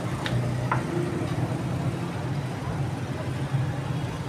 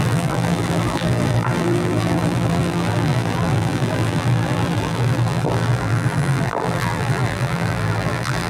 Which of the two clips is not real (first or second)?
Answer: second